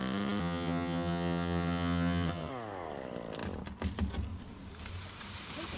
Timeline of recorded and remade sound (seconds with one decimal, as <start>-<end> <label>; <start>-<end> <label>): 0.0-0.4 recorded; 0.4-2.5 remade; 2.5-5.8 recorded